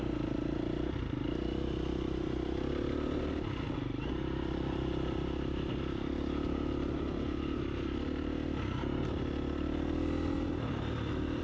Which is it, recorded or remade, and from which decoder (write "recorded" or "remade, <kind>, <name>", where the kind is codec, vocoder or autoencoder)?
recorded